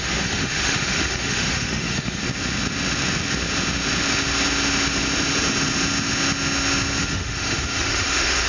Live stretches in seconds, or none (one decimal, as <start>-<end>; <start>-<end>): 2.2-7.0